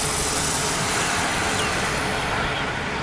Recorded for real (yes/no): yes